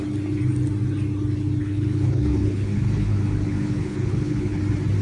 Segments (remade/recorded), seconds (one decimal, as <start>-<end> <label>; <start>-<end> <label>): 0.0-1.6 recorded; 1.6-4.6 remade; 4.6-5.0 recorded

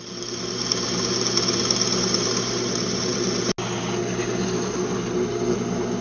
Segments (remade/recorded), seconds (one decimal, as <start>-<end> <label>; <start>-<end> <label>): 0.0-6.0 recorded

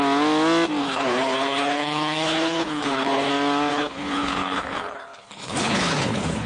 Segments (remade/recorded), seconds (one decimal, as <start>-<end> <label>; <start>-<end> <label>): 0.0-0.8 recorded; 0.8-3.3 remade; 3.3-3.7 recorded; 3.7-6.5 remade

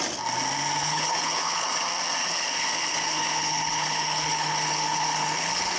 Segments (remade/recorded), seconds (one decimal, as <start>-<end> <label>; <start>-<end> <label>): 0.0-0.8 recorded; 0.8-1.8 remade; 1.8-2.2 recorded; 2.2-5.8 remade

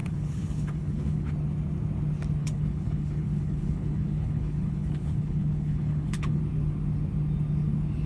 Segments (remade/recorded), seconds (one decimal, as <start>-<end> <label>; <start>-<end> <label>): 0.0-1.3 remade; 1.3-2.4 recorded; 2.4-6.4 remade; 6.4-8.1 recorded

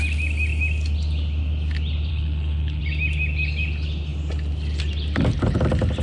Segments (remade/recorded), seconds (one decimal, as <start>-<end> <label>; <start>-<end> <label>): 0.0-2.1 recorded; 2.1-2.8 remade; 2.8-6.0 recorded

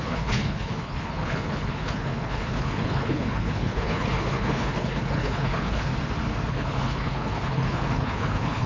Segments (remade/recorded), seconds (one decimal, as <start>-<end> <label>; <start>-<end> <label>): 0.0-5.9 remade; 5.9-6.5 recorded; 6.5-8.7 remade